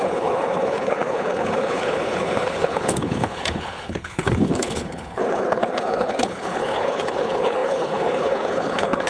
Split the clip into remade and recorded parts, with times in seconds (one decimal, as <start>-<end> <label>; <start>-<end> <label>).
0.0-9.1 remade